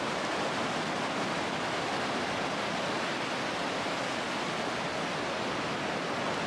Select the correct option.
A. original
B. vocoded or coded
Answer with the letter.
A